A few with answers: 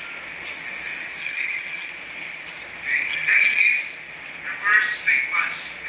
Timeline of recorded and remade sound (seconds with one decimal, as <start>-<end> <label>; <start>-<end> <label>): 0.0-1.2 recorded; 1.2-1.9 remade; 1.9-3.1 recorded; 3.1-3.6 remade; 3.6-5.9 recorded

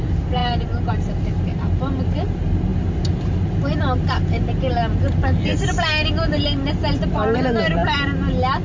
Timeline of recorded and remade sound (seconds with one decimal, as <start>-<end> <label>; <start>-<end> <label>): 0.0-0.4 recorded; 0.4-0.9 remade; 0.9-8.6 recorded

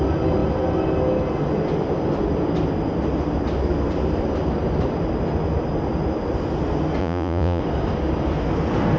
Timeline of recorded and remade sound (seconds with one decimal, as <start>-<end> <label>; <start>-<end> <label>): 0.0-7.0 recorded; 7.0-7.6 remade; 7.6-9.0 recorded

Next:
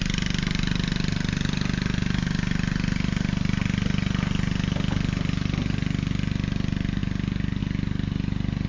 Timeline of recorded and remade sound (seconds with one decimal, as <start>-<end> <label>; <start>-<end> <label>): 0.0-8.7 recorded

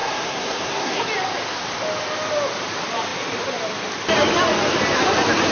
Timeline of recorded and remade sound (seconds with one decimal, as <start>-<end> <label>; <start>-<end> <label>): 0.0-1.0 remade; 1.0-5.5 recorded

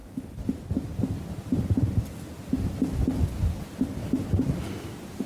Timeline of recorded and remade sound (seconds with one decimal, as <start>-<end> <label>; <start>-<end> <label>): 0.0-5.3 recorded